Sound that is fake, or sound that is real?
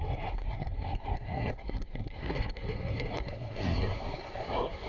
fake